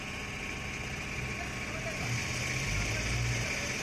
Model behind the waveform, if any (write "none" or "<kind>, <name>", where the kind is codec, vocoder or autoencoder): none